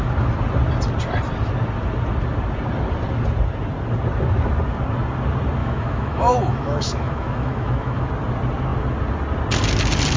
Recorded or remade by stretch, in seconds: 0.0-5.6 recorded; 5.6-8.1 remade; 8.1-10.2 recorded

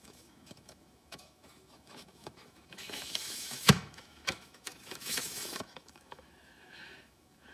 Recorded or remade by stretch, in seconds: 0.0-7.5 remade

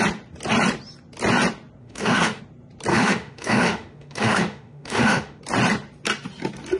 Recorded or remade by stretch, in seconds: 0.0-1.8 recorded; 1.8-2.4 remade; 2.4-2.9 recorded; 2.9-5.4 remade; 5.4-6.8 recorded

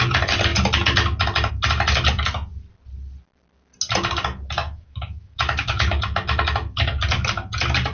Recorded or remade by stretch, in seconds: 0.0-4.6 recorded; 4.6-6.0 remade; 6.0-7.9 recorded